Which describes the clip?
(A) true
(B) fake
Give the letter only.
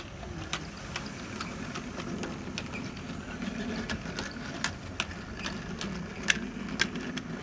A